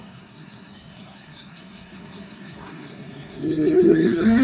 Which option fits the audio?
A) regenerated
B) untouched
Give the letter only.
A